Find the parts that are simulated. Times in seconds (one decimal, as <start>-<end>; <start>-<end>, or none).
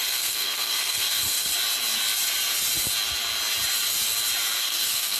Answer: 0.0-1.5; 4.6-5.2